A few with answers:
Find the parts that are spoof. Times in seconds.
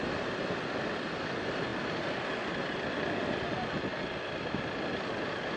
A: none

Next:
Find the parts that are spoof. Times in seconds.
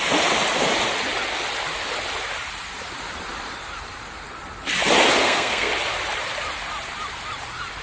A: 5.2-5.7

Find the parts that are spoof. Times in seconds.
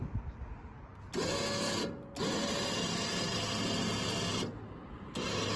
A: none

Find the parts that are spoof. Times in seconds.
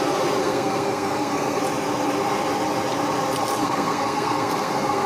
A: 0.4-1.6; 3.6-5.1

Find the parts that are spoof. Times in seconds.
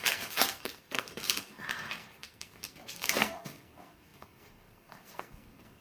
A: 0.0-5.8